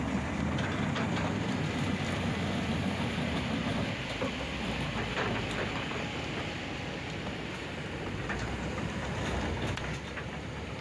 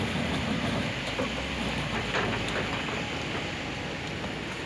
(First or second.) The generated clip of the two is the first